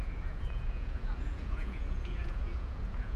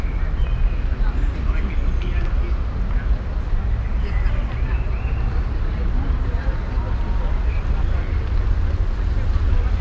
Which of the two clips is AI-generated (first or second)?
first